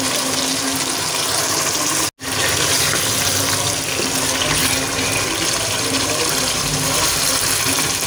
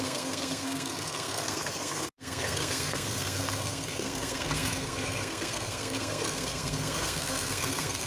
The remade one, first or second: second